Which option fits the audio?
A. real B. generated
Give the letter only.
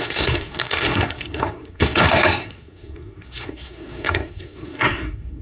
B